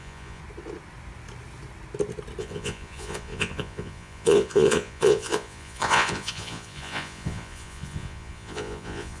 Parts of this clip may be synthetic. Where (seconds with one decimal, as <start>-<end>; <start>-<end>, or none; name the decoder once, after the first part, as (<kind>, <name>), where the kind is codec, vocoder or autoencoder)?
0.0-0.4 (vocoder, Vocos); 2.4-9.2